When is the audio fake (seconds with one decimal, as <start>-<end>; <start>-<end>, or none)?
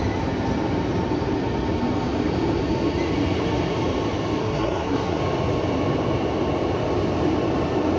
4.4-5.2